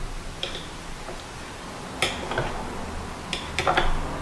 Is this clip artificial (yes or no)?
no